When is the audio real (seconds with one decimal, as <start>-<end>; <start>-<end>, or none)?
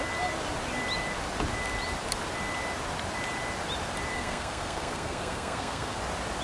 0.0-4.1; 6.0-6.4